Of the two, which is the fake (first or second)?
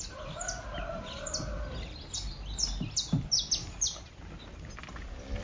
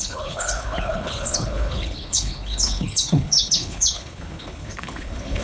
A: second